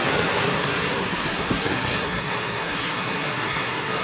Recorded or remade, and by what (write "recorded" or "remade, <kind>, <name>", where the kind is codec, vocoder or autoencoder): remade, codec, SNAC